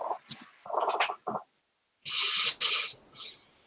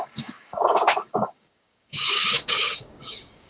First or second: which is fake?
second